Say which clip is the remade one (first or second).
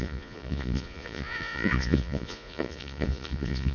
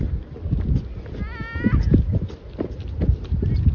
first